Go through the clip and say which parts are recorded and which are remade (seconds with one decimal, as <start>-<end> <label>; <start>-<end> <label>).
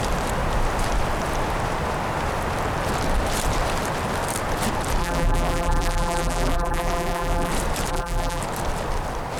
0.0-5.0 recorded; 5.0-7.5 remade; 7.5-7.9 recorded; 7.9-8.4 remade; 8.4-9.4 recorded